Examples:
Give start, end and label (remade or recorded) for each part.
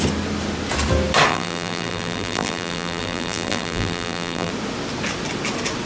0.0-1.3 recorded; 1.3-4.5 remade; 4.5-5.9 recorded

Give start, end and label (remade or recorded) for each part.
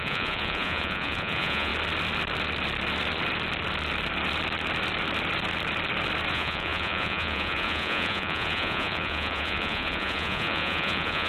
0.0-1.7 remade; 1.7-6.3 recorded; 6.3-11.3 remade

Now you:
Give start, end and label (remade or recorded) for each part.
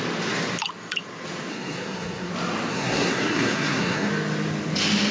0.0-1.5 recorded; 1.5-2.3 remade; 2.3-2.7 recorded; 2.7-4.1 remade; 4.1-5.1 recorded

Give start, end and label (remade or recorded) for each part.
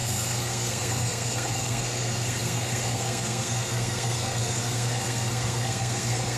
0.0-6.4 remade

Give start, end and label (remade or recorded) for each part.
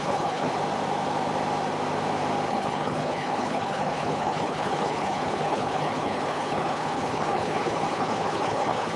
0.0-0.6 remade; 0.6-2.5 recorded; 2.5-9.0 remade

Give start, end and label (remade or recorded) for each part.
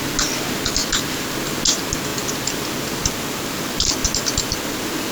0.0-5.1 recorded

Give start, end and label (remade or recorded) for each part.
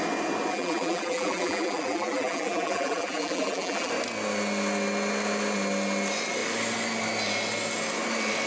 0.0-0.5 recorded; 0.5-3.9 remade; 3.9-8.5 recorded